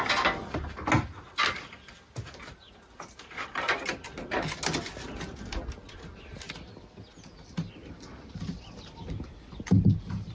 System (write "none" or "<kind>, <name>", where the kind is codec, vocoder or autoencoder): none